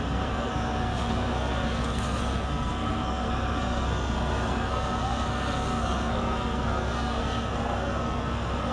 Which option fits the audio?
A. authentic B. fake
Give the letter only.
B